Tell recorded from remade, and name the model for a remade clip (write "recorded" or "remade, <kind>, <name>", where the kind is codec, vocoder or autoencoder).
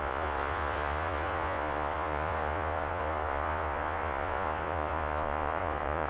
remade, vocoder, Vocos